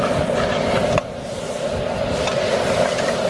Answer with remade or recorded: recorded